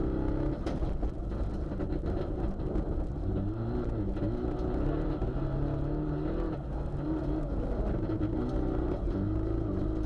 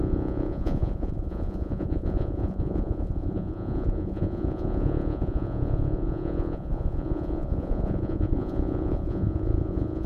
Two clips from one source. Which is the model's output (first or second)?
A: second